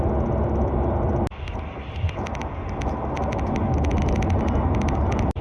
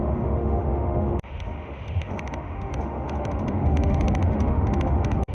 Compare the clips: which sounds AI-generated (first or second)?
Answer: second